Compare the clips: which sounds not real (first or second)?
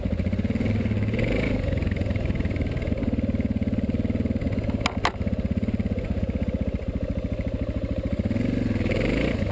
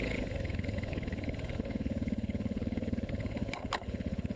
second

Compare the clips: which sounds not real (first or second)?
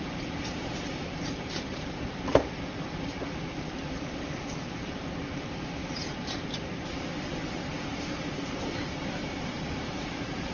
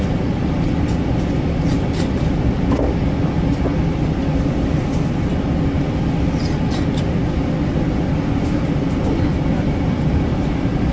first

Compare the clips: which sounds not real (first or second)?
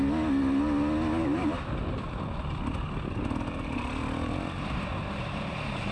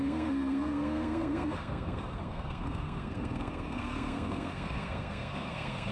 second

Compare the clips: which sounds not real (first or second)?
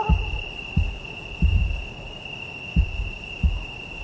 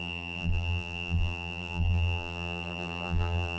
second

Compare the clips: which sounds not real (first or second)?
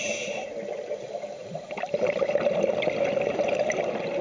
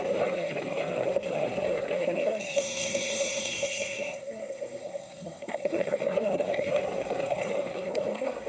second